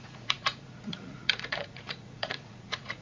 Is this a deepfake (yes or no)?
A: yes